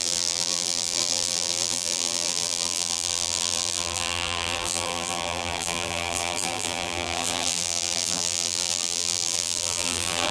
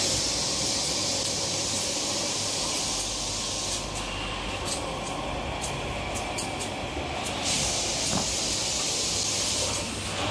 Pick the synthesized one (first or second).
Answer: first